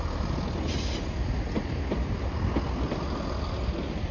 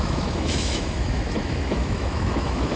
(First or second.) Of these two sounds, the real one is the first